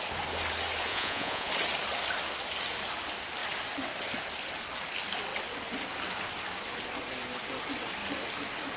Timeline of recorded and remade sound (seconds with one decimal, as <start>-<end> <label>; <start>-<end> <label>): 0.0-0.9 recorded; 0.9-1.5 remade; 1.5-8.8 recorded